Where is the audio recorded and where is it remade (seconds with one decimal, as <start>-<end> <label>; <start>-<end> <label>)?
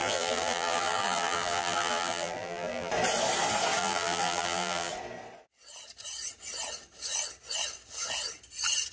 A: 0.0-2.9 remade; 2.9-3.8 recorded; 3.8-4.9 remade; 4.9-8.9 recorded